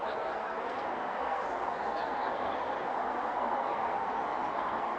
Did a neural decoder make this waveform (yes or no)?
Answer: yes